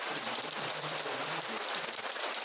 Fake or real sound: fake